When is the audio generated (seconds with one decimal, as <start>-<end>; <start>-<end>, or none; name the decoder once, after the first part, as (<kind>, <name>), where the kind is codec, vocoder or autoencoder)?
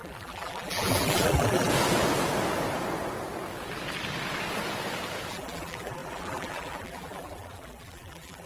0.0-1.7 (vocoder, BigVGAN v2); 5.3-8.5